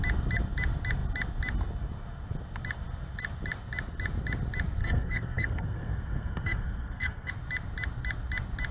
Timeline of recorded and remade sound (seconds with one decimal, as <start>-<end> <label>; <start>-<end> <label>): 0.0-4.8 recorded; 4.8-7.3 remade; 7.3-8.7 recorded